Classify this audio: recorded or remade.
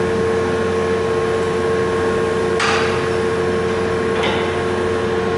recorded